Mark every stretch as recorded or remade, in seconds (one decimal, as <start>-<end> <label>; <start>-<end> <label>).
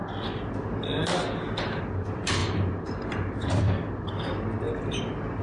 0.0-1.8 recorded; 1.8-5.4 remade